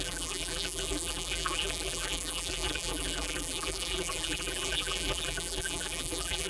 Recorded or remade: remade